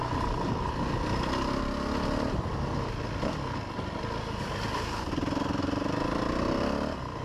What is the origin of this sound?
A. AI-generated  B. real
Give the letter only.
B